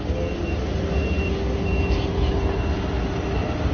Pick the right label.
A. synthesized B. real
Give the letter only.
B